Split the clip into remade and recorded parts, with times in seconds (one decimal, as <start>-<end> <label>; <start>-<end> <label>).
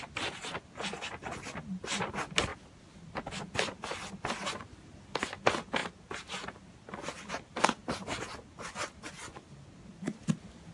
0.0-10.7 recorded